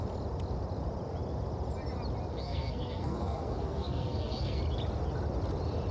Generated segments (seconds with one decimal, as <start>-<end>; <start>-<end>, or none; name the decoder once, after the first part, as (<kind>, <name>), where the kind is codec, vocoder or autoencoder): 2.3-4.6 (codec, SNAC)